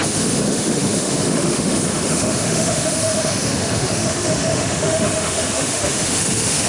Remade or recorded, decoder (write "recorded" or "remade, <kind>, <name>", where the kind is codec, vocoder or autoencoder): remade, autoencoder, DAC-VAE